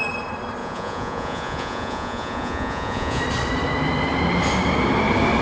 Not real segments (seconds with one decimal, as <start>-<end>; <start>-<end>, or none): 0.6-3.2